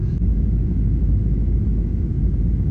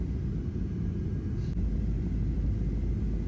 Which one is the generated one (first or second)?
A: first